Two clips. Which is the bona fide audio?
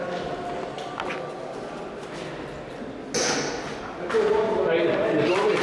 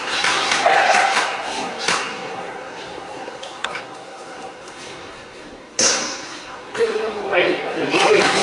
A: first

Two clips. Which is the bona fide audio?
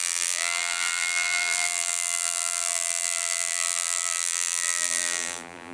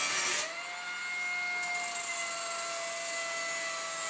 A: second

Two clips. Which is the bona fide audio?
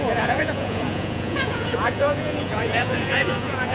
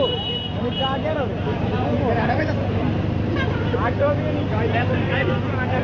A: second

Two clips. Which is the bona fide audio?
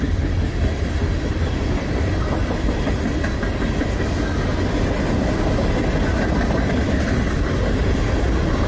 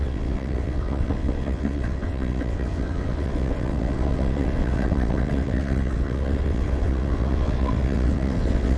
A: first